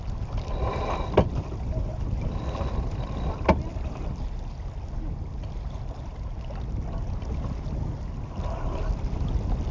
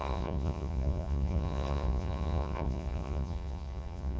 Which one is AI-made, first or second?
second